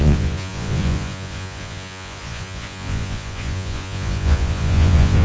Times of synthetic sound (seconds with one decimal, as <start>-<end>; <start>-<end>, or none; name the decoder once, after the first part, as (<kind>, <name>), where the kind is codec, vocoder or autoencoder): 0.0-5.2 (vocoder, Vocos)